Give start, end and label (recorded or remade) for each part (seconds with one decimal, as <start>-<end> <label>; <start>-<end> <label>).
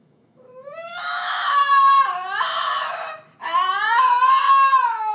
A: 0.0-1.6 remade; 1.6-4.5 recorded; 4.5-5.1 remade